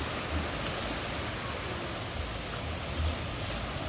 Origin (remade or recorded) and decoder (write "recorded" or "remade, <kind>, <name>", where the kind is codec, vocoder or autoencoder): recorded